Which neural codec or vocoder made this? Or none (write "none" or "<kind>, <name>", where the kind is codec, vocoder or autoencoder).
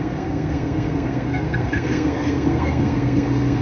codec, SNAC